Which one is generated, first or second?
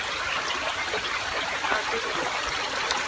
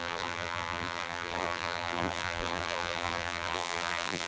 second